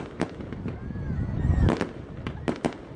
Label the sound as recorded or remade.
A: recorded